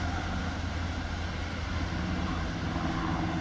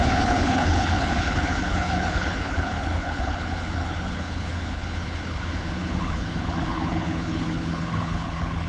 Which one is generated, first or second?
second